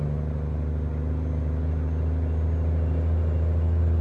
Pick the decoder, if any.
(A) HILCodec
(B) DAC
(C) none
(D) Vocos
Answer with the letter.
C